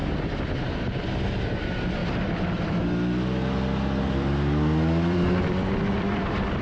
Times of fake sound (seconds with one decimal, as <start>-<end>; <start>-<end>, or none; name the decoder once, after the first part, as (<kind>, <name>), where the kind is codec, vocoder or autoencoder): 0.0-2.0 (vocoder, BigVGAN v2); 4.1-6.6